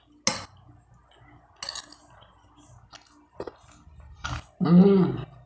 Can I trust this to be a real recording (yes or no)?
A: yes